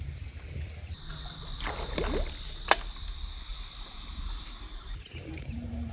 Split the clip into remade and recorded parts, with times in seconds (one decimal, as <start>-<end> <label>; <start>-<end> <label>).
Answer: 0.0-3.5 recorded; 3.5-5.9 remade